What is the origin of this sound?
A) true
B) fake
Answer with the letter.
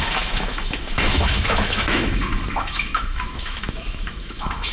B